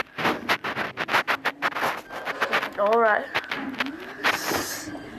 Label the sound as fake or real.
real